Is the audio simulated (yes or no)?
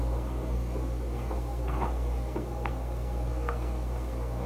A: yes